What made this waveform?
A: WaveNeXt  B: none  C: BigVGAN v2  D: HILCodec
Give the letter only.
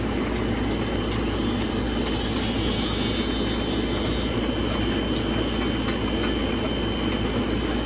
B